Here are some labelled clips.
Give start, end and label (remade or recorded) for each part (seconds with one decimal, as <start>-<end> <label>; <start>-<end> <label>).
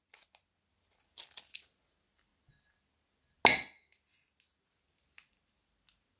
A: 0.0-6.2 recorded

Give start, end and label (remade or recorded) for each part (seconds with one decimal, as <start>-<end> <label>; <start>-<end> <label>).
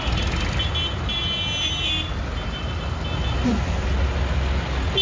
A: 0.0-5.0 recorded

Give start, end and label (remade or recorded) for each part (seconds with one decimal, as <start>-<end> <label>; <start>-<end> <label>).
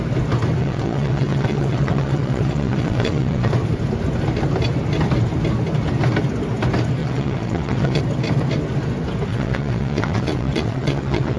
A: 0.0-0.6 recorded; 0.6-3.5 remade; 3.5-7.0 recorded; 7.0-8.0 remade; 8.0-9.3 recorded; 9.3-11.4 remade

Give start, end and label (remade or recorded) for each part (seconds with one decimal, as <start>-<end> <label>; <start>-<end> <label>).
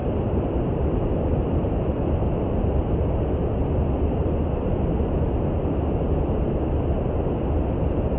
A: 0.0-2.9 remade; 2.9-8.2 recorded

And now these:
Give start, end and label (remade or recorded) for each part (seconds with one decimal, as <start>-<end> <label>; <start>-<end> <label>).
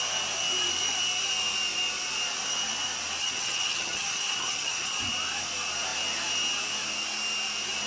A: 0.0-3.2 recorded; 3.2-5.0 remade; 5.0-7.9 recorded